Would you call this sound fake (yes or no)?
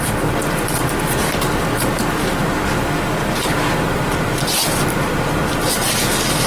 no